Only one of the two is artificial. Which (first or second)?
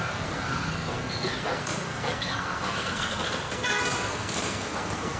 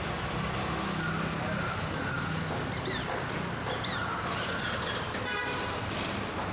first